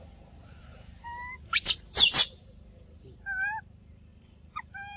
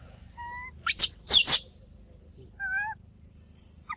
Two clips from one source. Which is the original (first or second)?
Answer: second